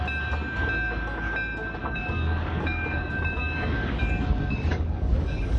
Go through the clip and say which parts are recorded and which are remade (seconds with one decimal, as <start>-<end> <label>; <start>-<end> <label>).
0.0-1.8 recorded; 1.8-5.6 remade

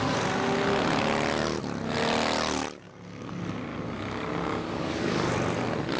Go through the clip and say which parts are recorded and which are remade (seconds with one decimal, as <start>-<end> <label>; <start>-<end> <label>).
0.0-3.7 recorded; 3.7-5.3 remade; 5.3-6.0 recorded

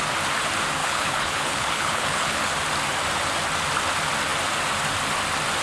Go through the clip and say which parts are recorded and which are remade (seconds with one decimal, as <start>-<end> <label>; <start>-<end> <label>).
0.0-0.8 recorded; 0.8-2.5 remade; 2.5-5.6 recorded

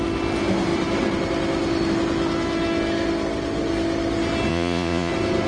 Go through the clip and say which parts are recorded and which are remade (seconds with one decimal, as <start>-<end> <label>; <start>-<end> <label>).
0.0-4.5 recorded; 4.5-5.1 remade; 5.1-5.5 recorded

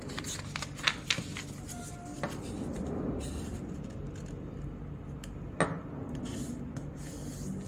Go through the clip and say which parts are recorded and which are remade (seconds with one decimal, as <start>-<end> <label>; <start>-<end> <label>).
0.0-7.7 recorded

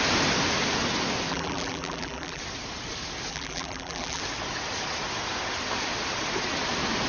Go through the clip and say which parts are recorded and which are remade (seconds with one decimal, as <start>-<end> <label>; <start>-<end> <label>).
0.0-1.3 recorded; 1.3-2.4 remade; 2.4-3.3 recorded; 3.3-4.2 remade; 4.2-7.1 recorded

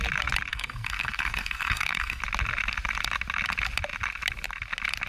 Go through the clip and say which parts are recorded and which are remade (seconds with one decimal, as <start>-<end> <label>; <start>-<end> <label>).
0.0-0.5 recorded; 0.5-2.2 remade; 2.2-5.1 recorded

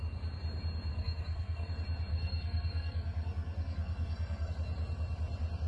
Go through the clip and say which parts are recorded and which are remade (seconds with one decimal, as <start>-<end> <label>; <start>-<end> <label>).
0.0-0.9 recorded; 0.9-1.7 remade; 1.7-2.1 recorded; 2.1-4.5 remade; 4.5-5.7 recorded